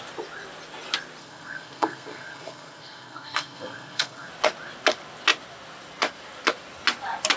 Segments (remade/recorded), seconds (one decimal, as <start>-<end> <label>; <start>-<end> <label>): 0.0-1.2 recorded; 1.2-4.3 remade; 4.3-7.4 recorded